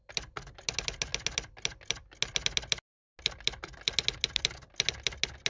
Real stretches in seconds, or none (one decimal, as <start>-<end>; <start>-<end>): 0.0-5.5